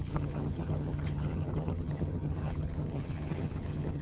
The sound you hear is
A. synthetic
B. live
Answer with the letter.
A